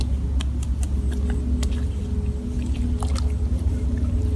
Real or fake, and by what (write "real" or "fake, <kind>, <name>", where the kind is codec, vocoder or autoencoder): real